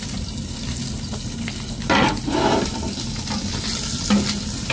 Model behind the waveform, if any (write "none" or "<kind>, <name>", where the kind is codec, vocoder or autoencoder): none